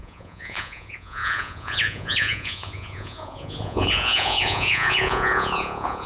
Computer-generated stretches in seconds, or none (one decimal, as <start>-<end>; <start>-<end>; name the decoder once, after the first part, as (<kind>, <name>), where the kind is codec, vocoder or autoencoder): 0.0-6.1 (vocoder, Vocos)